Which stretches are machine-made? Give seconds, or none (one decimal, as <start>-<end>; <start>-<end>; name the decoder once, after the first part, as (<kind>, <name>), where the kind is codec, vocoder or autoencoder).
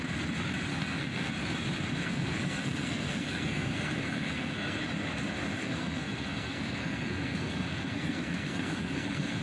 0.7-1.3 (codec, SNAC); 2.0-4.8; 5.6-9.4